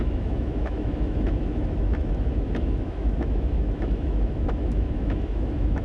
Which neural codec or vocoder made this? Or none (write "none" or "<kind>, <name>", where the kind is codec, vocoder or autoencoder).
autoencoder, DAC-VAE